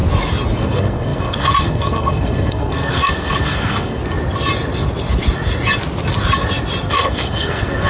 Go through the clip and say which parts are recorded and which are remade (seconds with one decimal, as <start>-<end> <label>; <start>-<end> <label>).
0.0-0.6 recorded; 0.6-4.0 remade; 4.0-6.9 recorded; 6.9-7.9 remade